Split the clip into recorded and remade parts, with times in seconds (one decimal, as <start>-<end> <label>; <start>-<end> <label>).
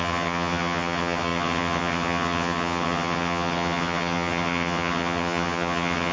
0.0-6.1 remade